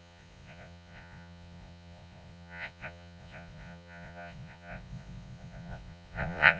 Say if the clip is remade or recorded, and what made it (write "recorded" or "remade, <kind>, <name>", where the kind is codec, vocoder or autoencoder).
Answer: remade, vocoder, Vocos